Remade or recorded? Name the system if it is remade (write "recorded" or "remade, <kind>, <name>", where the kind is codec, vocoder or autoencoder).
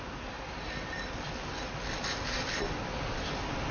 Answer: recorded